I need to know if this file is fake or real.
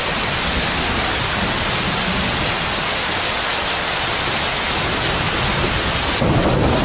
real